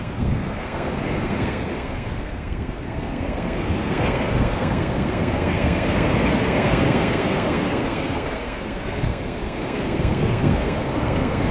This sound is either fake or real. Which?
fake